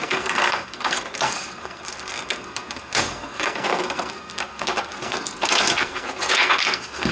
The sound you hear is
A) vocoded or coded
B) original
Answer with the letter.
A